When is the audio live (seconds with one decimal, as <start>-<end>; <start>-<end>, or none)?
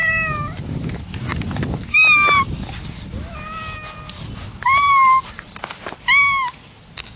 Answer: 0.0-7.2